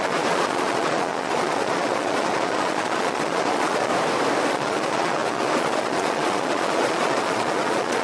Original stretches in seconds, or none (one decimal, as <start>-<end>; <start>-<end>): 3.9-4.5

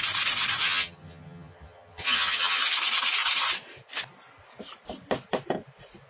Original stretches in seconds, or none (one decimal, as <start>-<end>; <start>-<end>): 0.0-0.6; 2.6-6.1

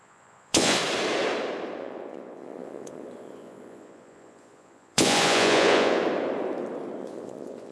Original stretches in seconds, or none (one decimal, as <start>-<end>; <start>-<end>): 0.8-1.8; 6.0-7.0

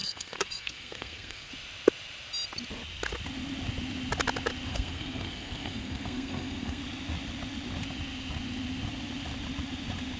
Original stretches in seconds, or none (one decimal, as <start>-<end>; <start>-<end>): 1.5-4.7; 6.8-10.2

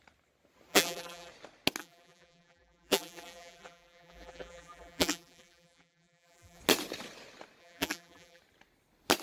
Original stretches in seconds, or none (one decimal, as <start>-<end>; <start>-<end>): 0.0-0.7; 1.3-1.8; 6.6-7.6; 8.4-9.2

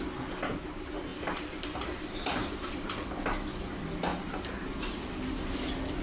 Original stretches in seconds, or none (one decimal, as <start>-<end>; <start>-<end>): 0.0-1.1; 3.1-4.1; 4.7-6.0